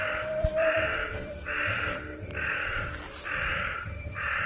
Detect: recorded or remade remade